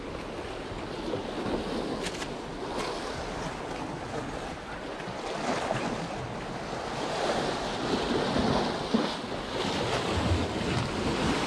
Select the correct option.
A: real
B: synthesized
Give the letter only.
A